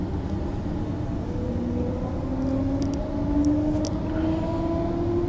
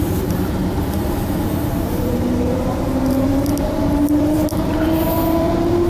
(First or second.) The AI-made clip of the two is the second